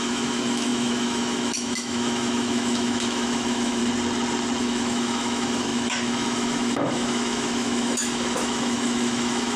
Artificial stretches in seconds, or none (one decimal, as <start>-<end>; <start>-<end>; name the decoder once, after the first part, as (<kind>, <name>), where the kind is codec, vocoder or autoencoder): 0.0-3.8 (autoencoder, DAC-VAE); 4.6-9.6